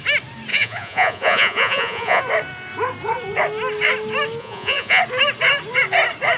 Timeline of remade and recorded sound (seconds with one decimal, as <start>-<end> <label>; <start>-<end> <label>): 0.0-0.5 recorded; 0.5-2.2 remade; 2.2-4.4 recorded; 4.4-5.0 remade; 5.0-6.4 recorded